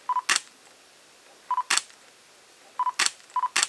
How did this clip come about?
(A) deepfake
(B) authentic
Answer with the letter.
B